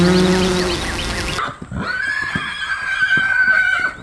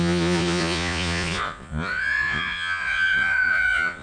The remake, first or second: second